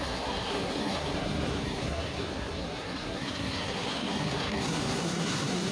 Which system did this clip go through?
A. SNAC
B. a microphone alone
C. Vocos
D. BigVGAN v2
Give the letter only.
A